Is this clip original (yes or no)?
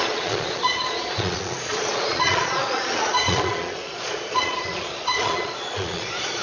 no